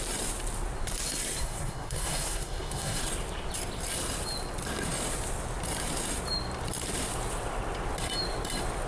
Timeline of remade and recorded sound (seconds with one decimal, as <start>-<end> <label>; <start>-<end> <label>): 0.0-1.4 recorded; 1.4-3.0 remade; 3.0-8.9 recorded

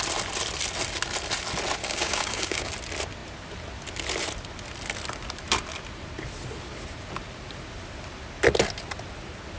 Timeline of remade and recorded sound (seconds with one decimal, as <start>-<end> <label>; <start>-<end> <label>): 0.0-1.8 recorded; 1.8-2.7 remade; 2.7-9.6 recorded

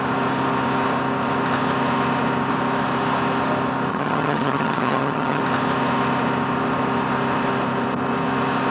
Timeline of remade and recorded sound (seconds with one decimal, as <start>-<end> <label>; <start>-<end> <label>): 0.0-3.9 recorded; 3.9-5.4 remade; 5.4-8.7 recorded

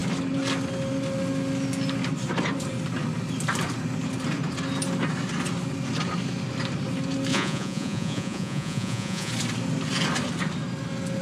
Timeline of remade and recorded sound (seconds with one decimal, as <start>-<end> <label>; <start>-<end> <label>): 0.0-7.3 recorded; 7.3-9.3 remade; 9.3-11.2 recorded

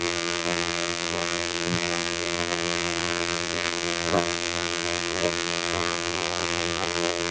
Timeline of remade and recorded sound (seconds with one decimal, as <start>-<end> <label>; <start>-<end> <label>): 0.0-7.3 remade

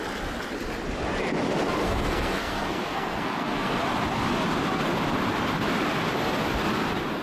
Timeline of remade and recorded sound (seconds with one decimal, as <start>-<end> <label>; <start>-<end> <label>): 0.0-1.8 recorded; 1.8-3.8 remade; 3.8-7.2 recorded

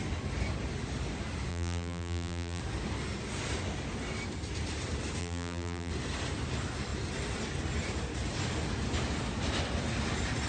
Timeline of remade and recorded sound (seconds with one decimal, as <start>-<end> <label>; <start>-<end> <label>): 0.0-1.5 recorded; 1.5-2.6 remade; 2.6-5.2 recorded; 5.2-5.9 remade; 5.9-10.5 recorded

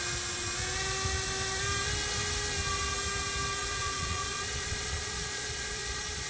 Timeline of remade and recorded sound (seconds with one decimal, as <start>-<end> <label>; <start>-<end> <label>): 0.0-3.6 recorded; 3.6-6.3 remade